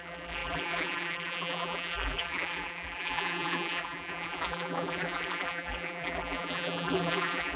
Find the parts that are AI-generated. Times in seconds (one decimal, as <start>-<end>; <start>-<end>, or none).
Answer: 0.0-7.6

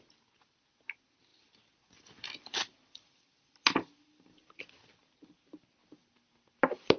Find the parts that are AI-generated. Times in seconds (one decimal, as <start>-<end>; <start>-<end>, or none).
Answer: 1.3-4.6